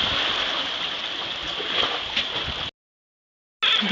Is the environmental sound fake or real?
real